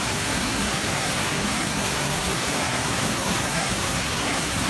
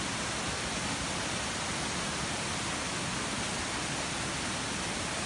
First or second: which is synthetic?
first